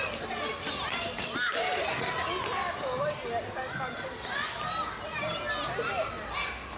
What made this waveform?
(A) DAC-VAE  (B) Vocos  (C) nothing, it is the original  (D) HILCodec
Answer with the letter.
C